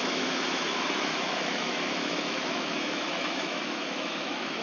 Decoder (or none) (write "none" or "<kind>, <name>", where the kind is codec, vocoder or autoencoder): autoencoder, DAC-VAE